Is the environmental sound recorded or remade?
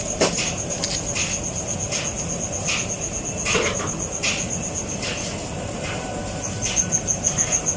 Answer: recorded